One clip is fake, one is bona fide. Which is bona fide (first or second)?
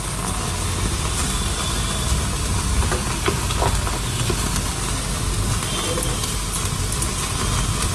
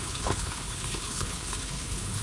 first